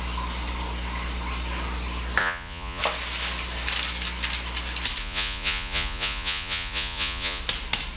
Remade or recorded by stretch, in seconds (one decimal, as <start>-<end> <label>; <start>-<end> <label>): 0.0-2.2 recorded; 2.2-2.8 remade; 2.8-5.0 recorded; 5.0-7.4 remade; 7.4-8.0 recorded